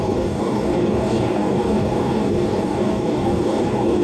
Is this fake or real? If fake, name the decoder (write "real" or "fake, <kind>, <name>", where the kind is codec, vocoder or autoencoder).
fake, codec, DAC